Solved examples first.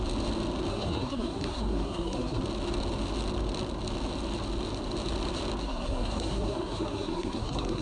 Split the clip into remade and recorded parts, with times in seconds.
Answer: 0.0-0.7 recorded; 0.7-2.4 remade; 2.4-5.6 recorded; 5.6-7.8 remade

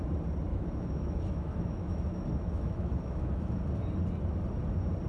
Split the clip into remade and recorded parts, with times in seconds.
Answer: 0.0-0.5 recorded; 0.5-3.6 remade; 3.6-5.1 recorded

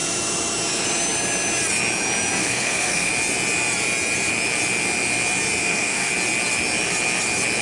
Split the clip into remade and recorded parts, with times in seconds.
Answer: 0.0-2.4 recorded; 2.4-3.1 remade; 3.1-5.6 recorded; 5.6-6.1 remade; 6.1-7.6 recorded

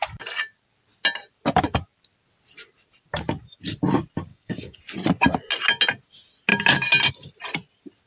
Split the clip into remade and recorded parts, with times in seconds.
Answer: 0.0-4.3 recorded; 4.3-4.8 remade; 4.8-8.1 recorded